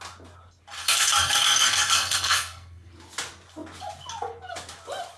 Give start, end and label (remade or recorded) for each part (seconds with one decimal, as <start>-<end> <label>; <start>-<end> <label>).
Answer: 0.0-0.8 recorded; 0.8-2.9 remade; 2.9-5.2 recorded